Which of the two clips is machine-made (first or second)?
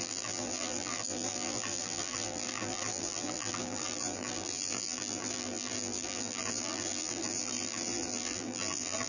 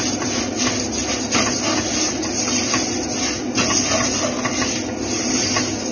first